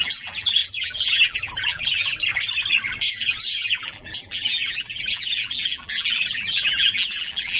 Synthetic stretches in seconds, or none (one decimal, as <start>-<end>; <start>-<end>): 0.0-2.1; 3.1-7.6